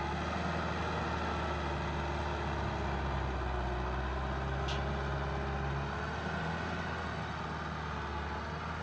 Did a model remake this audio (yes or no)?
no